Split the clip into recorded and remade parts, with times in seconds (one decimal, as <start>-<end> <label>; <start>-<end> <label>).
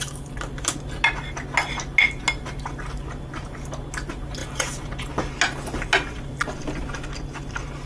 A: 0.0-4.4 recorded; 4.4-5.0 remade; 5.0-7.9 recorded